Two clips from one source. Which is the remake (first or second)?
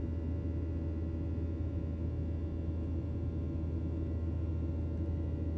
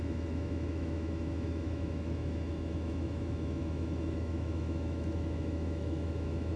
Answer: second